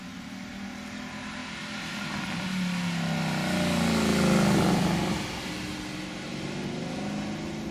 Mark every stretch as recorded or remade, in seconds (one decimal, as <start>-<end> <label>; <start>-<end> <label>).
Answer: 0.0-7.7 recorded